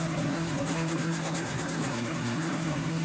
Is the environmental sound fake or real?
fake